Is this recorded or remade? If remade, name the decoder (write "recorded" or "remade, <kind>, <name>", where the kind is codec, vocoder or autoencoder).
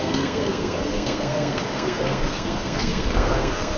remade, codec, SNAC